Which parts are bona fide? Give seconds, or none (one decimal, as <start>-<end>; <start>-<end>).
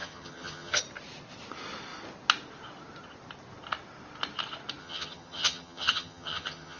0.8-4.8